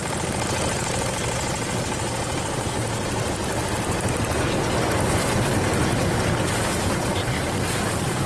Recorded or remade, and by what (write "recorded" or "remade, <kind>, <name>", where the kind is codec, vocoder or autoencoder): recorded